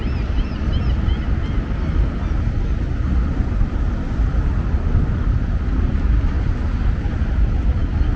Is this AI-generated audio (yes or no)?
no